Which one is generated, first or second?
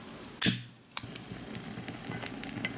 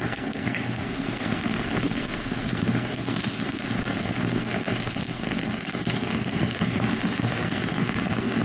second